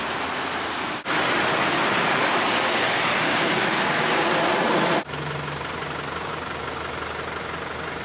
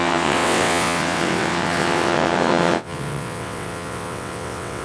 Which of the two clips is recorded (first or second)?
first